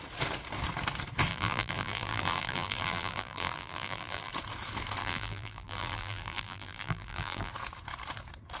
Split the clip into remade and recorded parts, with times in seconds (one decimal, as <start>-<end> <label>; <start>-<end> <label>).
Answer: 0.0-1.3 recorded; 1.3-4.3 remade; 4.3-5.0 recorded; 5.0-7.5 remade; 7.5-8.6 recorded